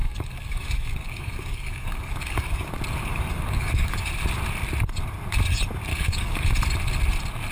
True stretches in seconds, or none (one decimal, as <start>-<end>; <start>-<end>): 2.7-3.1; 4.1-5.9; 6.5-7.5